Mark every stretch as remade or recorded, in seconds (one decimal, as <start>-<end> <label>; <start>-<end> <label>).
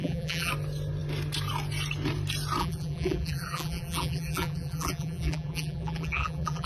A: 0.0-0.5 remade; 0.5-2.6 recorded; 2.6-6.7 remade